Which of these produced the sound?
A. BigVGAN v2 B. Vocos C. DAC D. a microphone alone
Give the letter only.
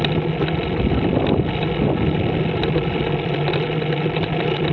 D